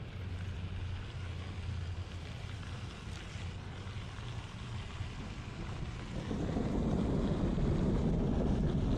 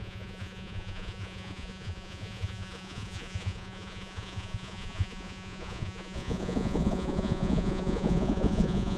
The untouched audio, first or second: first